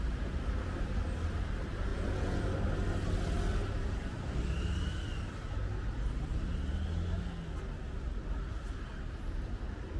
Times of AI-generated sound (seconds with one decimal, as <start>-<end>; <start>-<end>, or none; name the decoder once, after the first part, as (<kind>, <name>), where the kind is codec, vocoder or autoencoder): 1.9-2.4 (vocoder, Vocos)